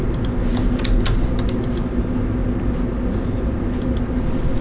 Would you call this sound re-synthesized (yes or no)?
no